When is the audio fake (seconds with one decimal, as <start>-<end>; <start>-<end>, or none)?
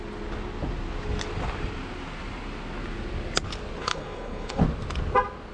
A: 3.8-4.6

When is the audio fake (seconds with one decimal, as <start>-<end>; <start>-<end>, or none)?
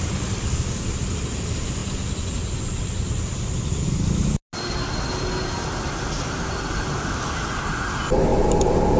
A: none